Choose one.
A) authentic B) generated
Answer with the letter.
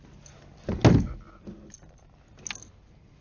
A